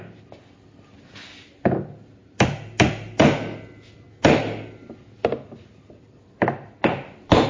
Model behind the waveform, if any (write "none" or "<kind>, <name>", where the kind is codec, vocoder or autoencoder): none